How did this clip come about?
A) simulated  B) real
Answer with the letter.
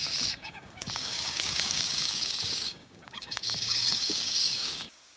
A